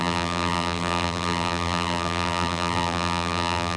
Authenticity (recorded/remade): remade